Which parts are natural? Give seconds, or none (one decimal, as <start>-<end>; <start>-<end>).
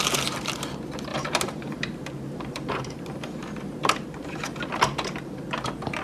0.0-1.1; 4.2-6.0